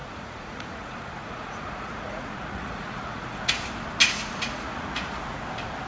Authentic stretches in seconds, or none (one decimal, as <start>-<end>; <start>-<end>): 3.5-4.0; 5.4-5.9